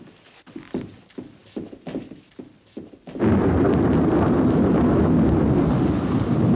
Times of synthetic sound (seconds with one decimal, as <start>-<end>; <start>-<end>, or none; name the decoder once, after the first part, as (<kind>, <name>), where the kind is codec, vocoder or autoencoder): none